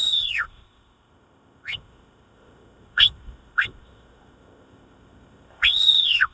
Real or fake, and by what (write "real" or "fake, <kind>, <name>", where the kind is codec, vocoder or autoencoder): fake, codec, ZipCodec